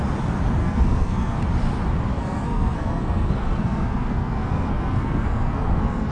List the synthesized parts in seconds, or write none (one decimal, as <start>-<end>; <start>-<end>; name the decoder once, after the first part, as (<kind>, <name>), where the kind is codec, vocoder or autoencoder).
0.6-1.4 (codec, SNAC); 2.1-6.1